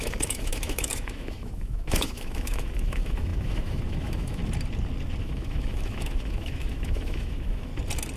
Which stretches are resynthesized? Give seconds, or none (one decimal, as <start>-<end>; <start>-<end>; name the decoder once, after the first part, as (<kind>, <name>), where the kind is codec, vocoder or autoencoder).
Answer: 0.0-4.4 (autoencoder, DAC-VAE); 5.2-7.7